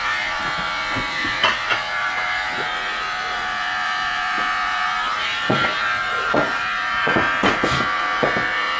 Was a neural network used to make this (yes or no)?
yes